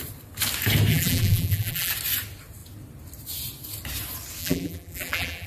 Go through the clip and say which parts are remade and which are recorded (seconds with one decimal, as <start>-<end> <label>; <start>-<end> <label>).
0.0-0.9 recorded; 0.9-1.9 remade; 1.9-4.4 recorded; 4.4-5.5 remade